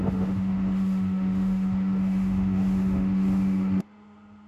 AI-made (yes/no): yes